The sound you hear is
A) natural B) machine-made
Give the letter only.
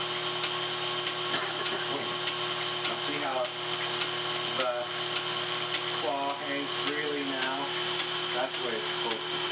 A